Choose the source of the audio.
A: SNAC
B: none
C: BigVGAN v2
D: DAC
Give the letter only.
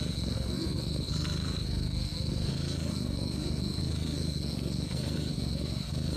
A